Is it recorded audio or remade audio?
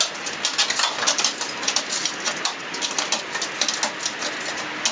recorded